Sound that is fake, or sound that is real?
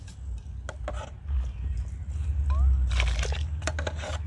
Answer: real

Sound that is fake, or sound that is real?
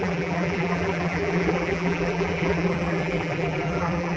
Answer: fake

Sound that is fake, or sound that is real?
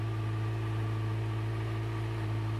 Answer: real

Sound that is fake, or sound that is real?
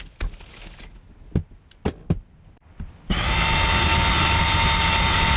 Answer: real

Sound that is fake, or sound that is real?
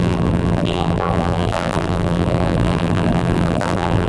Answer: fake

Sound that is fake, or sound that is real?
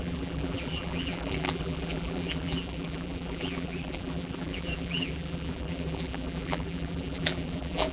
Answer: fake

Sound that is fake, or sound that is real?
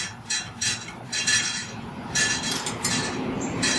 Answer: fake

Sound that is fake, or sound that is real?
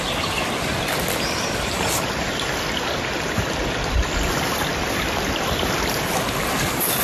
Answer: real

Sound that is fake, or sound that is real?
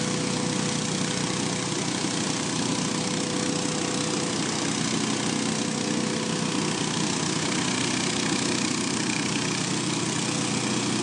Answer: real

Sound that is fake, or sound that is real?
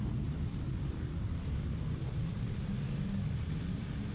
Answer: real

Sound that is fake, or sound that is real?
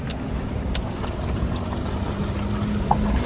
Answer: real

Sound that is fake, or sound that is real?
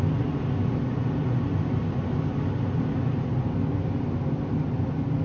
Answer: real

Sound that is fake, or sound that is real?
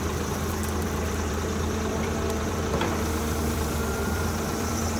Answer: fake